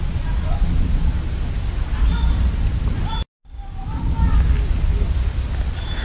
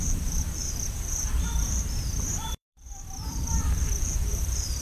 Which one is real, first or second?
first